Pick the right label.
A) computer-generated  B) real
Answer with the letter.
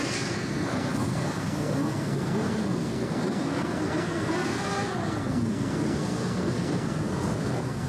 A